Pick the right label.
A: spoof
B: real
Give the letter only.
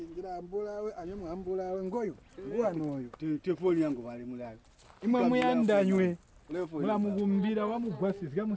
B